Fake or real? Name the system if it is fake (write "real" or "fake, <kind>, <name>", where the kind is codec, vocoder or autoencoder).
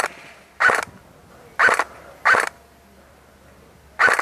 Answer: real